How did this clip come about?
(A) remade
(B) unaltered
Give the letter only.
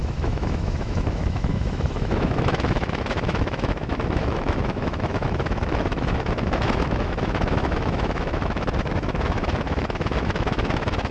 A